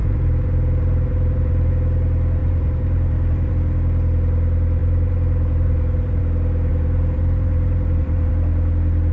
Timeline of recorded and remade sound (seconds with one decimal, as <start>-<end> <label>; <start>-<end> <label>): 0.0-1.7 remade; 1.7-2.4 recorded; 2.4-3.5 remade; 3.5-4.8 recorded; 4.8-6.2 remade; 6.2-6.7 recorded; 6.7-8.3 remade; 8.3-9.1 recorded